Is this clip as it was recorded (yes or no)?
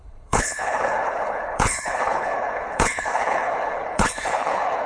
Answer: no